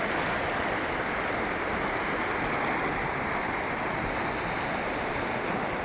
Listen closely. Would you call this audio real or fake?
real